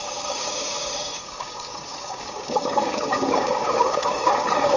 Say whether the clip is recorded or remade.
remade